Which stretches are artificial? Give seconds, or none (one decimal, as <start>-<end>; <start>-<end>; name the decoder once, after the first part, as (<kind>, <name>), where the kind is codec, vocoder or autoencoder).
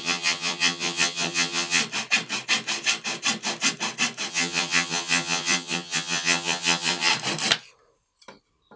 0.0-1.8 (vocoder, HiFi-GAN); 4.3-7.1